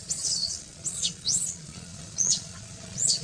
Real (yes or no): no